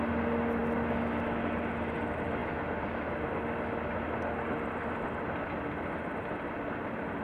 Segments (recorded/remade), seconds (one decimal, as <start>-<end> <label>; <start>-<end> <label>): 0.0-7.2 recorded